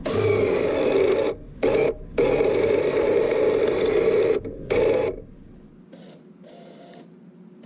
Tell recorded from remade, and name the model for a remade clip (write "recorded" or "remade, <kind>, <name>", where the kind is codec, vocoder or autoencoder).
recorded